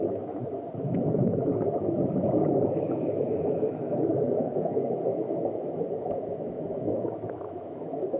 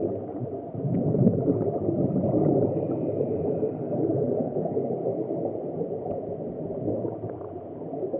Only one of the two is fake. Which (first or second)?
first